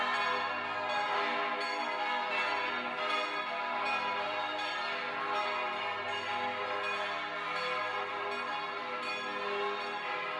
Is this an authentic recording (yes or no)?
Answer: yes